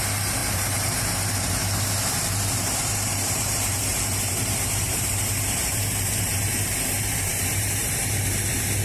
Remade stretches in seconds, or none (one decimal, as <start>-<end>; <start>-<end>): 0.4-1.0; 2.6-7.8